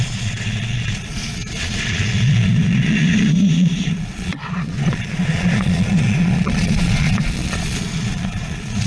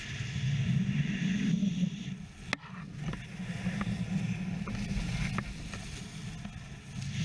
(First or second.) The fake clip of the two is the first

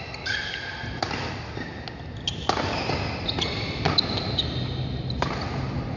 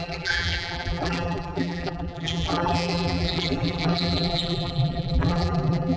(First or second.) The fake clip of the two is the second